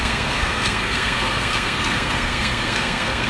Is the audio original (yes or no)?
no